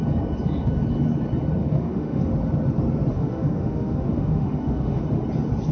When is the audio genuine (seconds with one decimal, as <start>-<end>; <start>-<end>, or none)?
0.0-1.6; 2.2-3.1; 5.0-5.7